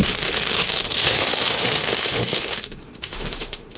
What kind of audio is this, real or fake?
fake